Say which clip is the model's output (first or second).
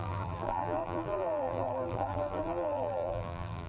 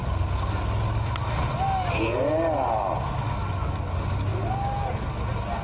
first